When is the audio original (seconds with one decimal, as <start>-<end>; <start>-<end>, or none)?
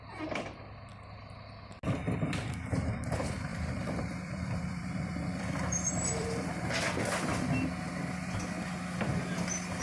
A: 0.0-3.5; 6.7-9.8